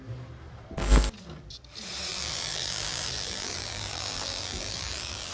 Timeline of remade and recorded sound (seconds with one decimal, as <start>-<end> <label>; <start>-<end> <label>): 0.0-2.1 recorded; 2.1-5.3 remade